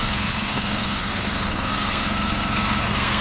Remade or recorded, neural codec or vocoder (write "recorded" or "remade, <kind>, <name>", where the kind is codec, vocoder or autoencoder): remade, codec, SNAC